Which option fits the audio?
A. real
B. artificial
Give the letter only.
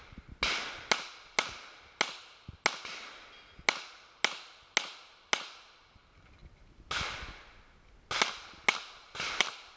A